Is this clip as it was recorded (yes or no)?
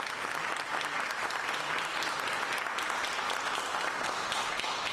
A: yes